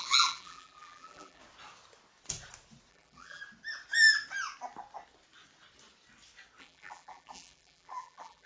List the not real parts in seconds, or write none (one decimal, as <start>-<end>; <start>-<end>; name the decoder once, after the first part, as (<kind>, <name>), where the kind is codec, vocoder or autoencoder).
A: 0.0-1.4 (vocoder, BigVGAN v2); 2.9-3.4; 6.6-8.5